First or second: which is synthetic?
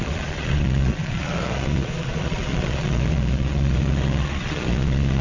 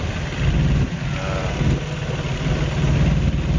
first